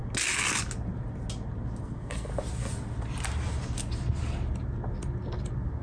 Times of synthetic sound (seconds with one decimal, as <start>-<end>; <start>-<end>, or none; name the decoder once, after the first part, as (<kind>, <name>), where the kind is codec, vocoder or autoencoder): 1.8-2.3 (codec, SNAC)